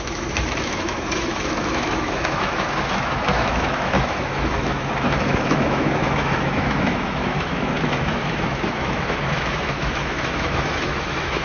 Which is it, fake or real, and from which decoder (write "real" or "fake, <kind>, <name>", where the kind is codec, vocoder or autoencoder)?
fake, autoencoder, DAC-VAE